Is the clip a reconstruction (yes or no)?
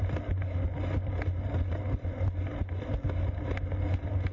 no